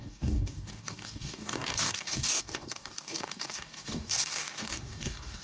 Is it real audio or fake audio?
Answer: fake